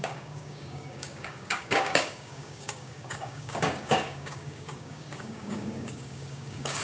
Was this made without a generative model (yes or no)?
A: no